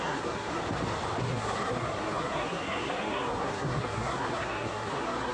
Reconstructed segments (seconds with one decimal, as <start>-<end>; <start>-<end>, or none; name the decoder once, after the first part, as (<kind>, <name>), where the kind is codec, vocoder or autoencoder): 0.0-0.6 (codec, SNAC); 1.2-5.3